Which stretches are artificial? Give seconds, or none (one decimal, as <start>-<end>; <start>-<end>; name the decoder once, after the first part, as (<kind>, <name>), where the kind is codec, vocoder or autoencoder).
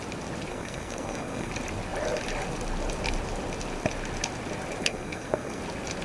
0.5-1.5 (codec, SNAC); 4.8-5.6